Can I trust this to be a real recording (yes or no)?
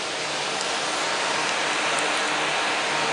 yes